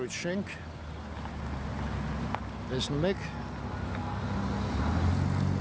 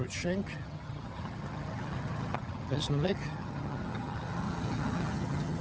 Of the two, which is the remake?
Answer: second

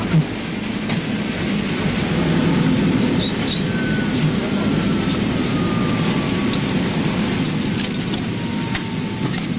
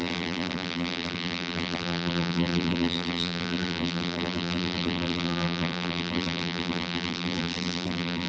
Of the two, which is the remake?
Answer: second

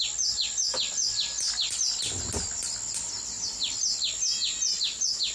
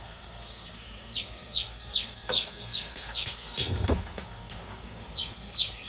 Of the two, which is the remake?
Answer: second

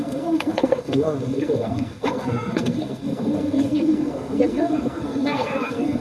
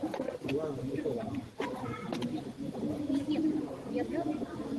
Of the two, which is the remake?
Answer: first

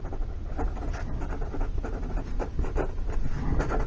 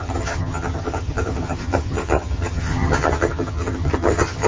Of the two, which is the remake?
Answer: second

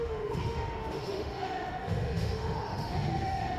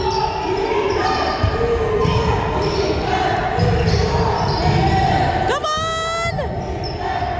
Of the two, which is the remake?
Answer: first